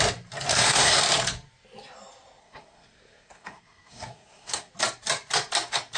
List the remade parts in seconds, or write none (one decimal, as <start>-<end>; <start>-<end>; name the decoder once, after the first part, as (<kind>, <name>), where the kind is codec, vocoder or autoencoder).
0.5-1.0 (codec, SNAC); 2.4-4.7